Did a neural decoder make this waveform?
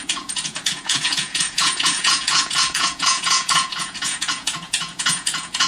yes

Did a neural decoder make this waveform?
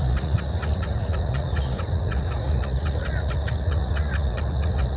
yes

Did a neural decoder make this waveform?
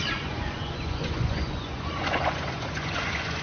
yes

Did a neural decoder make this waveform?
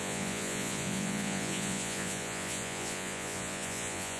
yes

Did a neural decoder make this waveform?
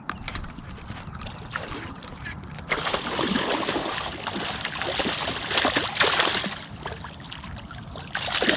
no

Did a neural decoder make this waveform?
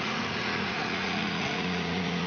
yes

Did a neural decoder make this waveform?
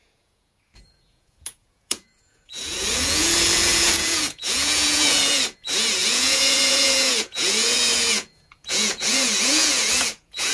yes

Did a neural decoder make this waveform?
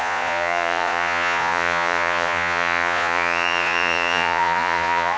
yes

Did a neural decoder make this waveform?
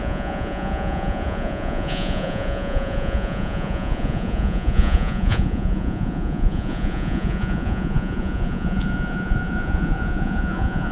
yes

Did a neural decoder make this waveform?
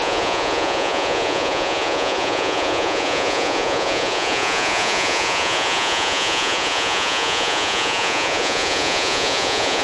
yes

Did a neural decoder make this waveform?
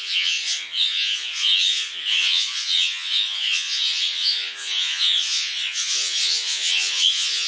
yes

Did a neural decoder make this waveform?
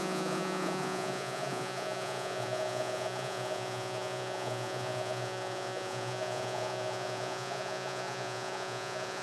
yes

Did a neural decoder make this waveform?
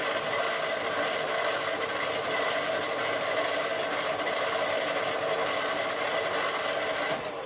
no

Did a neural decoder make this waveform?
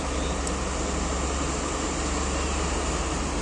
no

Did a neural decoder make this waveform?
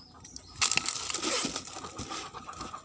no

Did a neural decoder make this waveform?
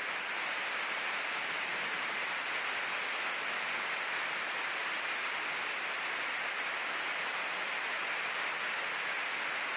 no